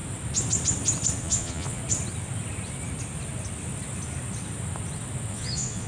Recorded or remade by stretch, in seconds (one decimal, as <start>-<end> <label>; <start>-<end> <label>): 0.0-1.2 recorded; 1.2-1.8 remade; 1.8-5.3 recorded; 5.3-5.9 remade